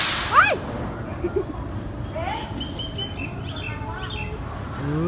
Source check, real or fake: real